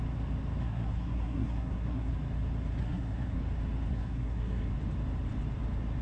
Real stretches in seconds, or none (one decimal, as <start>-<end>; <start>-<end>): 0.0-0.6; 2.1-2.8; 3.4-3.9; 4.7-6.0